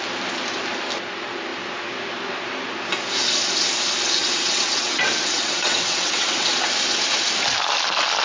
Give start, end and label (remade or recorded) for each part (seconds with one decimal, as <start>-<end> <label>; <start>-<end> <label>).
0.0-4.2 recorded; 4.2-6.5 remade; 6.5-8.2 recorded